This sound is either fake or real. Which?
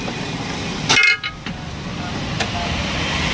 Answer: real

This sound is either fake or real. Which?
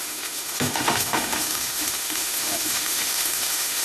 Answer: fake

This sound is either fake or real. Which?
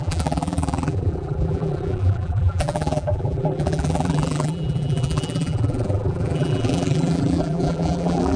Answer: fake